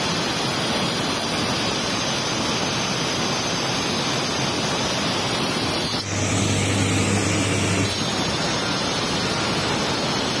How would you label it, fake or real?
real